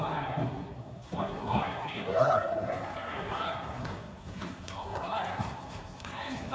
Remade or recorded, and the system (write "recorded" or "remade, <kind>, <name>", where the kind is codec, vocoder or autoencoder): remade, codec, SNAC